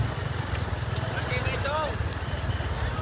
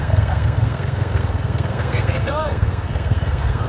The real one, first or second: first